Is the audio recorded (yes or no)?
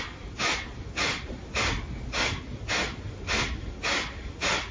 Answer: yes